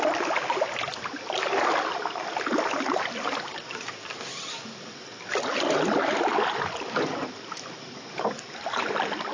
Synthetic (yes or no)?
no